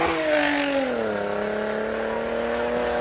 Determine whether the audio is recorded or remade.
recorded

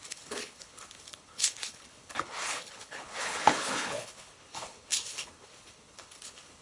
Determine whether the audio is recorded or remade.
remade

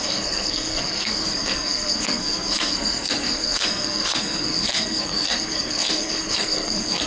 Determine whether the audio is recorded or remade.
remade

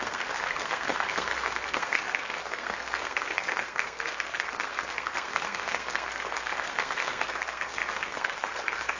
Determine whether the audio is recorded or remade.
remade